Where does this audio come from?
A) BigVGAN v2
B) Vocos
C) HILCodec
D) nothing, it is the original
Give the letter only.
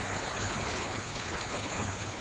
C